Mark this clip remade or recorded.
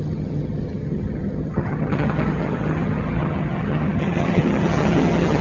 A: remade